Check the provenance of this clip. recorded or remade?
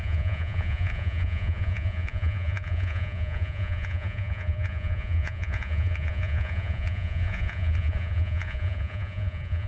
remade